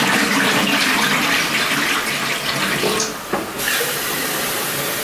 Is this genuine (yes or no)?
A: yes